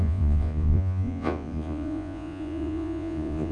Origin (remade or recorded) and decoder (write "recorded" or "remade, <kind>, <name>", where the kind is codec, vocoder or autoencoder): remade, vocoder, Vocos